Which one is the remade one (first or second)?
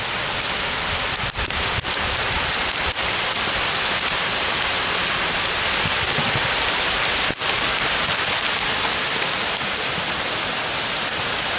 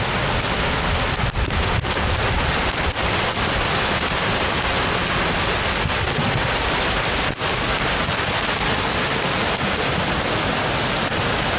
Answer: first